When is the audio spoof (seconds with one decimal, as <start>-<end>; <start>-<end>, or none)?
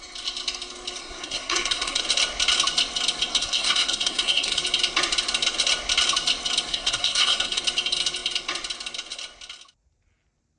1.0-2.0; 3.4-4.6; 6.7-7.6